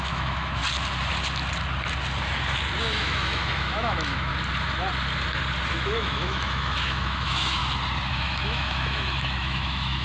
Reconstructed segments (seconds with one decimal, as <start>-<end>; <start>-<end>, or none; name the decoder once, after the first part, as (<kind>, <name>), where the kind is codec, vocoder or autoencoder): 0.0-0.6 (autoencoder, DAC-VAE); 2.8-4.3; 5.7-7.6; 8.1-10.0